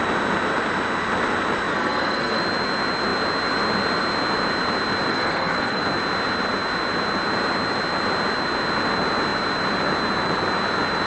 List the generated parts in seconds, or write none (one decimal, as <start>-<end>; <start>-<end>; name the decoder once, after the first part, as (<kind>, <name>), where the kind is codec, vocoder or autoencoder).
1.7-2.4 (codec, SNAC); 5.1-5.8